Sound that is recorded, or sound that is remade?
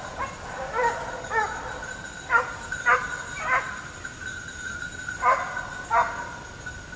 recorded